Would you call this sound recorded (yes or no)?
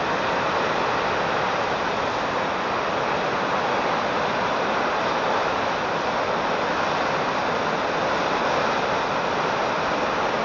yes